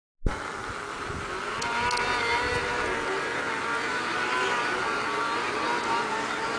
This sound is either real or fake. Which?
real